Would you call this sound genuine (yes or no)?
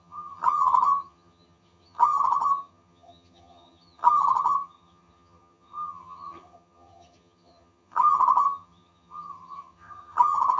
no